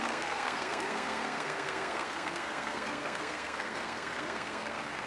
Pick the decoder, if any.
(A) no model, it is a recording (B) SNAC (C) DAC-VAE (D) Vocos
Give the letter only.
B